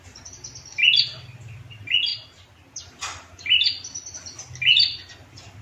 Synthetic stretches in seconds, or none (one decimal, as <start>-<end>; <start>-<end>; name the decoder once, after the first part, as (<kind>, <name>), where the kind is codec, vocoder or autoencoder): none